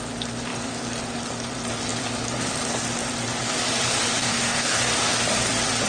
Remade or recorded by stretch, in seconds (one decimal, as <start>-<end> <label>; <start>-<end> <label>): 0.0-4.2 recorded; 4.2-4.9 remade; 4.9-5.9 recorded